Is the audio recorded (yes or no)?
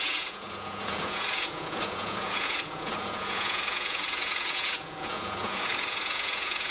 no